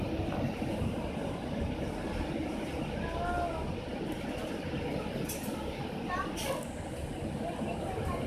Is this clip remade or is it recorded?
recorded